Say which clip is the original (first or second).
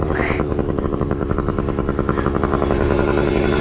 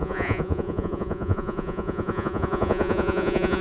first